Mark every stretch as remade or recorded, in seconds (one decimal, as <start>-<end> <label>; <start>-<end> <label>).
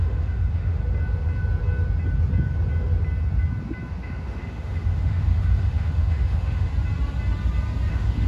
0.0-0.8 remade; 0.8-3.9 recorded; 3.9-6.7 remade; 6.7-7.9 recorded; 7.9-8.3 remade